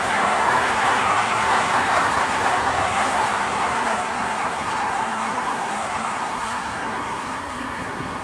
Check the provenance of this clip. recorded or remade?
remade